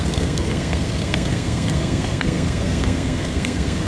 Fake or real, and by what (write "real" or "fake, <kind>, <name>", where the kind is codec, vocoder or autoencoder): fake, codec, SNAC